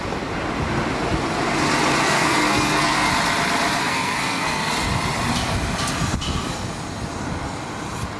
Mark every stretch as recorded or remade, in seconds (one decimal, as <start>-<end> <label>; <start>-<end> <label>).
0.0-2.0 recorded; 2.0-3.1 remade; 3.1-3.8 recorded; 3.8-4.7 remade; 4.7-8.2 recorded